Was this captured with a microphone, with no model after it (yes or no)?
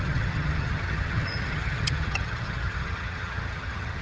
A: no